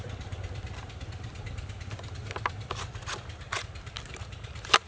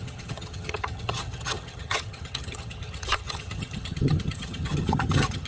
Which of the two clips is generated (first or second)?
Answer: second